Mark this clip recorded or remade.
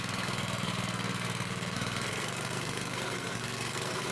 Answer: remade